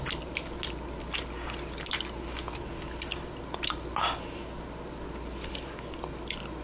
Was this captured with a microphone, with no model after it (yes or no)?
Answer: yes